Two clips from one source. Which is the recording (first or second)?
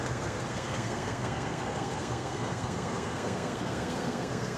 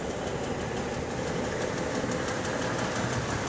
second